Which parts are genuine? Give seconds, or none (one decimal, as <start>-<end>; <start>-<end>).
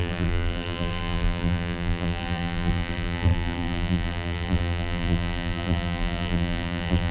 none